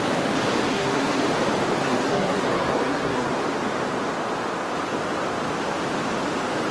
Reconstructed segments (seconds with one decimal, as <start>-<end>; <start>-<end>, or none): 0.7-1.2; 1.8-3.3